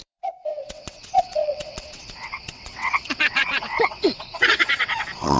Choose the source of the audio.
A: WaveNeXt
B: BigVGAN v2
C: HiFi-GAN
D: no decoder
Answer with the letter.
A